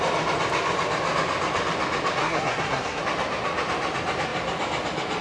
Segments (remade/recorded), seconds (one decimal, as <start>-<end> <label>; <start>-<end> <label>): 0.0-2.2 recorded; 2.2-3.0 remade; 3.0-5.2 recorded